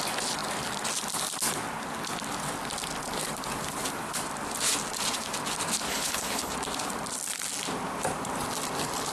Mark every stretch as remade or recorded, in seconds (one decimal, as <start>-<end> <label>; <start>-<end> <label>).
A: 0.0-5.9 recorded; 5.9-6.5 remade; 6.5-9.1 recorded